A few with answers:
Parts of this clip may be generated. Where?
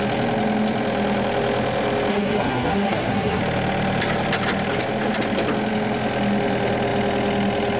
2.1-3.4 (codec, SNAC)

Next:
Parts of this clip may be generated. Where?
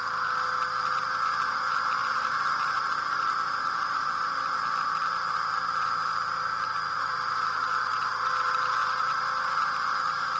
none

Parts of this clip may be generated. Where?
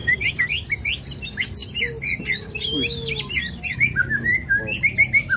4.4-5.4 (vocoder, BigVGAN v2)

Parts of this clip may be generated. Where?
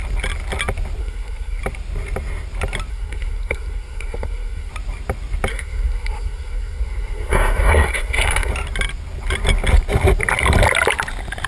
1.0-1.6 (codec, SNAC); 2.9-4.7; 5.5-8.5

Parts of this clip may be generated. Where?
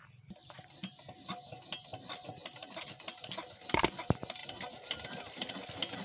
4.4-5.5 (vocoder, BigVGAN v2)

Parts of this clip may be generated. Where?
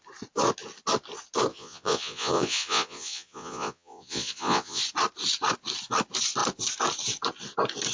1.5-4.8 (vocoder, Vocos)